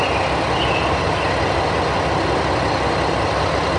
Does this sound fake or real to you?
real